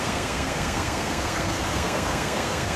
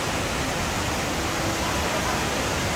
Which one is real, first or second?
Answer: second